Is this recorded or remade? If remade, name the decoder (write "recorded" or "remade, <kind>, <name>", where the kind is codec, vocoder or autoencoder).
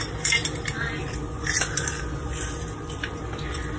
recorded